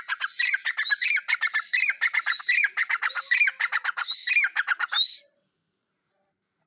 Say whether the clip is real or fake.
fake